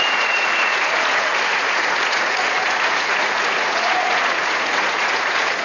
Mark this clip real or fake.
fake